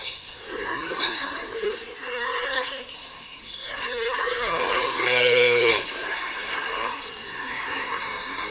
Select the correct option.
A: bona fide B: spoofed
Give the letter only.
B